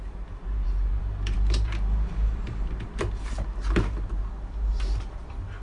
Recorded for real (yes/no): no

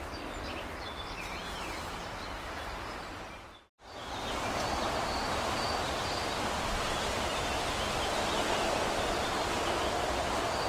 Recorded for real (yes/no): yes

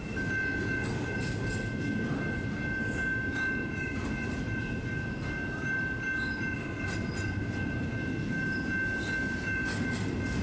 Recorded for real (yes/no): yes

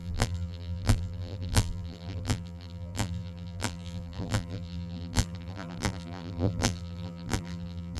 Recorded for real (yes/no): no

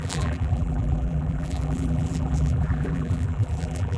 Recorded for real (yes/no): no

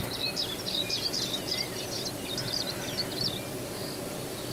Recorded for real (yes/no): yes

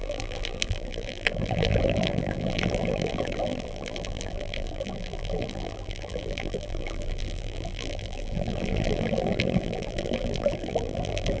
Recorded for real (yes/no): no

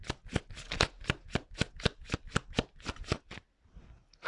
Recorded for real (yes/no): yes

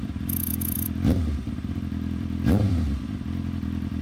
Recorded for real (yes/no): no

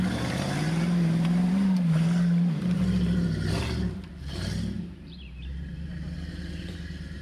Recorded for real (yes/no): no